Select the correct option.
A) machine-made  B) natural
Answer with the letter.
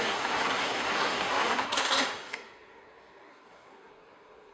A